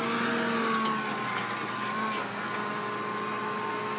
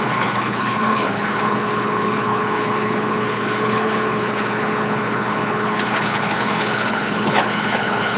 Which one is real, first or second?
first